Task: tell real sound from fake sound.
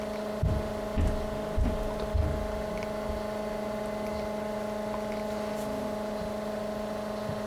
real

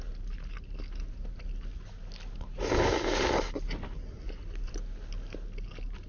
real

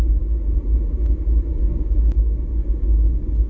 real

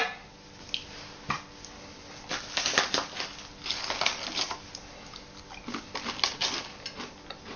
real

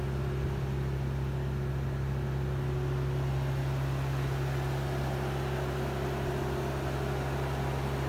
real